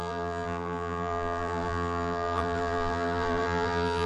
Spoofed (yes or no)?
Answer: yes